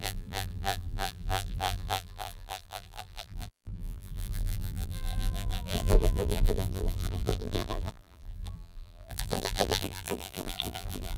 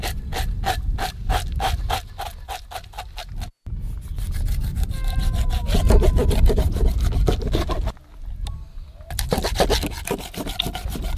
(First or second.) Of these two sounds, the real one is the second